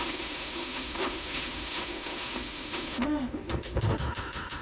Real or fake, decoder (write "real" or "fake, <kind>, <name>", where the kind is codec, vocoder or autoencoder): fake, autoencoder, DAC-VAE